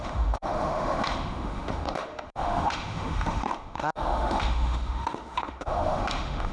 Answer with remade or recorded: remade